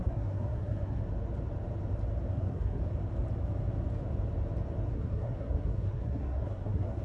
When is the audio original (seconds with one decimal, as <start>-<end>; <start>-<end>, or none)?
1.0-2.3; 2.8-4.9